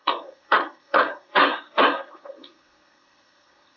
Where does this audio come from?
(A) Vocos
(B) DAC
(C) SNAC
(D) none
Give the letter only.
C